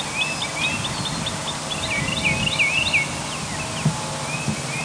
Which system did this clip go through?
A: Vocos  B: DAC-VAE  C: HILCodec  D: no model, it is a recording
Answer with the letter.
D